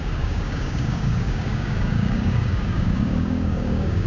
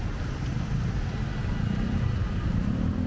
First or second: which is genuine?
second